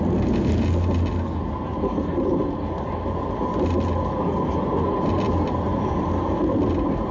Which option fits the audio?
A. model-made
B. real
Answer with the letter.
B